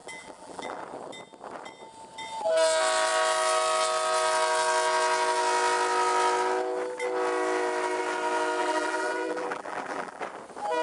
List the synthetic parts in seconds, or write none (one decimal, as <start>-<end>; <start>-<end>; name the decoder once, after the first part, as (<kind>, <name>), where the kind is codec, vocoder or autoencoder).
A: 0.0-0.8 (vocoder, BigVGAN v2); 8.6-10.2